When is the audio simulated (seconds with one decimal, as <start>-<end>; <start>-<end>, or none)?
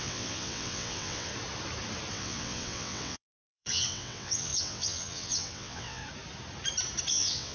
0.0-1.3; 2.1-6.0; 7.1-7.5